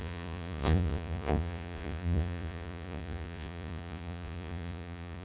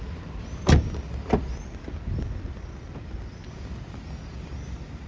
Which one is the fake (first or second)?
first